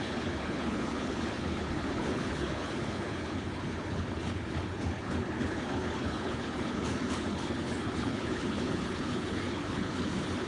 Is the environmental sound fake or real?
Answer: fake